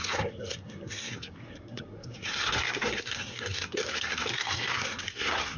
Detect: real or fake fake